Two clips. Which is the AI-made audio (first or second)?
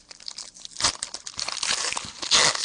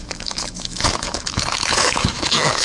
second